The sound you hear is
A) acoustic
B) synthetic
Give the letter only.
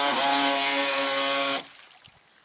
A